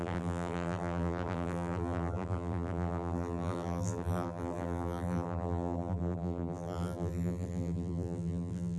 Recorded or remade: remade